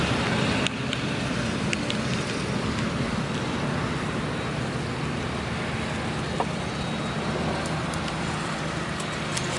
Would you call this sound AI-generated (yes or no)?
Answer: no